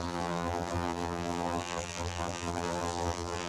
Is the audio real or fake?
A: fake